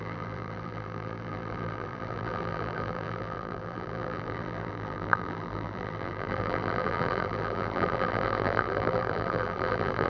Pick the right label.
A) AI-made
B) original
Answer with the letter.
A